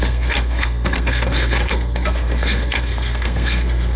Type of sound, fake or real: fake